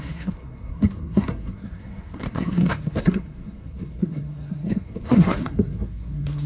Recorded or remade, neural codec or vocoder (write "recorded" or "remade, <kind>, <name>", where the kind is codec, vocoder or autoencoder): remade, codec, SNAC